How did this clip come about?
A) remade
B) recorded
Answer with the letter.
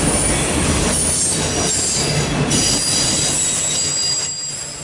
B